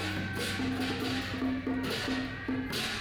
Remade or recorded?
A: recorded